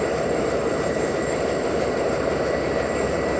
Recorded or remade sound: remade